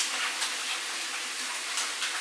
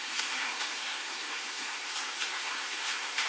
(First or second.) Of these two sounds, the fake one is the second